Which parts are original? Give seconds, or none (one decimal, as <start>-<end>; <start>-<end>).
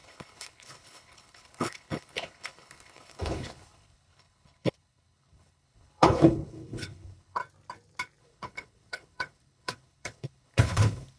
7.4-8.2